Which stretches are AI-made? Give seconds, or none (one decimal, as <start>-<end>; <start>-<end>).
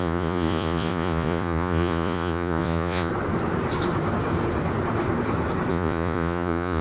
0.0-3.1; 5.7-6.8